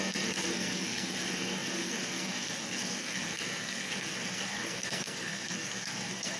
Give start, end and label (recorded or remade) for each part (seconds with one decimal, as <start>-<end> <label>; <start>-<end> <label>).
0.0-6.4 remade